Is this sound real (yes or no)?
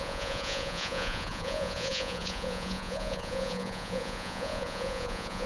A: no